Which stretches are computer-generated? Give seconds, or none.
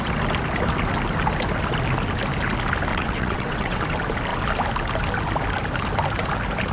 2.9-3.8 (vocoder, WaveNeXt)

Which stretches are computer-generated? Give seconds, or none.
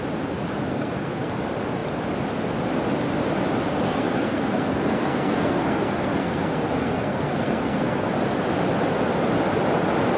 0.7-1.3 (codec, SNAC); 3.7-8.1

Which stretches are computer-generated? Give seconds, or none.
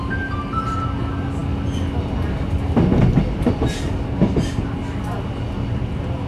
none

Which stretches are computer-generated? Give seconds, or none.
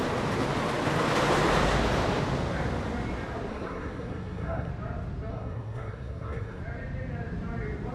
3.5-4.7 (codec, SNAC); 5.3-6.6